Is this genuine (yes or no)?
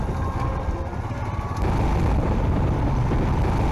yes